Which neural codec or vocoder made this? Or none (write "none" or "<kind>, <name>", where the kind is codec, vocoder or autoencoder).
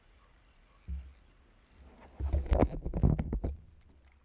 none